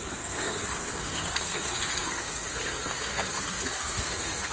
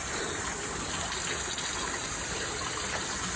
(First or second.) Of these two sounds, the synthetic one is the first